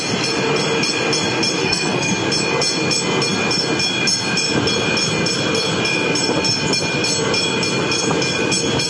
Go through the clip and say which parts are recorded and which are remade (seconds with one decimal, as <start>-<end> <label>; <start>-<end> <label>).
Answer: 0.0-1.6 recorded; 1.6-2.1 remade; 2.1-8.9 recorded